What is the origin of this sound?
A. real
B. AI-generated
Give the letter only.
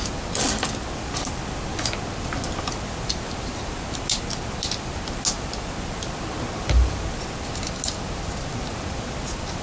A